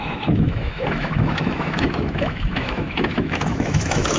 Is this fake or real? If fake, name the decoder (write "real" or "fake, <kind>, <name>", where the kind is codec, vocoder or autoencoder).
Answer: fake, autoencoder, DAC-VAE